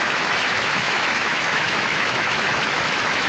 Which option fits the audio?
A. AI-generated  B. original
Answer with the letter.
A